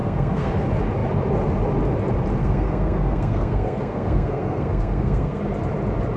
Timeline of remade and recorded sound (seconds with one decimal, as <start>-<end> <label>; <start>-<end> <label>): 0.0-0.5 remade; 0.5-2.4 recorded; 2.4-5.4 remade; 5.4-6.2 recorded